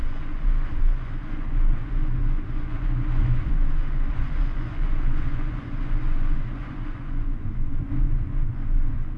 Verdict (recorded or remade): remade